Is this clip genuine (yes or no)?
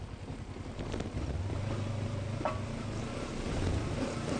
yes